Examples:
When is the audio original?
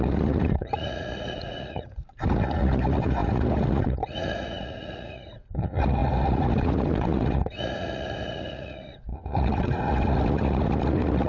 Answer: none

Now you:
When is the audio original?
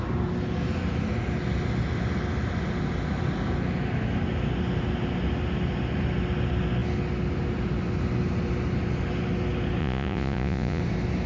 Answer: 0.0-9.8; 10.8-11.3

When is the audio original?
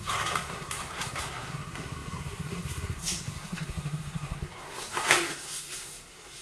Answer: none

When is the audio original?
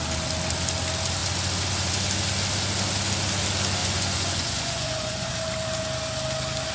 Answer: 0.0-3.8; 5.3-6.7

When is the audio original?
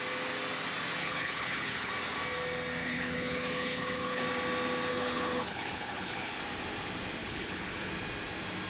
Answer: 0.0-1.0; 1.9-2.8; 4.2-4.9; 6.4-7.2; 7.9-8.7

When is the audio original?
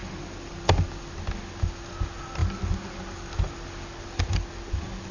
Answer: 0.0-5.1